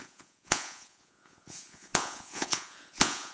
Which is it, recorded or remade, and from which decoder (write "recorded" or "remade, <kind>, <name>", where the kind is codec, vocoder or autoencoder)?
remade, vocoder, Vocos